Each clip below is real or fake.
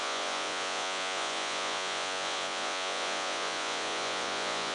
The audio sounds fake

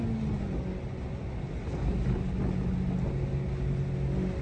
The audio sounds real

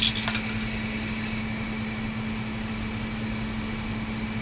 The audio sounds real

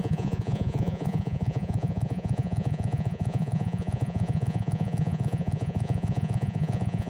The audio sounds fake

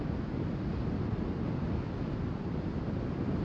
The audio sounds real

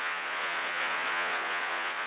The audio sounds fake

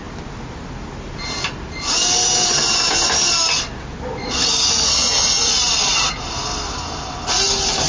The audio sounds real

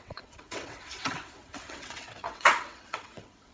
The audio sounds fake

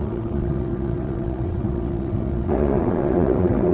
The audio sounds fake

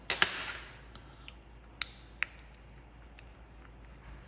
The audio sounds real